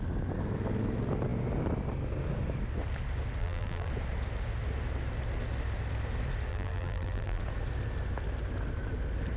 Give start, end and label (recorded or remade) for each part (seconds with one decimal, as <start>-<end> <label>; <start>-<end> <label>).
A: 0.0-3.4 recorded; 3.4-3.9 remade; 3.9-6.5 recorded; 6.5-7.4 remade; 7.4-9.4 recorded